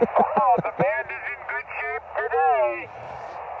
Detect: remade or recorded recorded